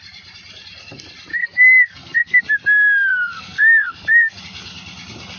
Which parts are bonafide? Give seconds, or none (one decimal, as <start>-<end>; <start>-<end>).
0.0-1.3; 2.4-3.1; 4.4-5.4